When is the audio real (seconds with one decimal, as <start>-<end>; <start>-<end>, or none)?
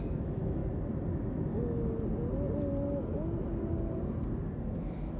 0.6-1.1; 1.5-4.6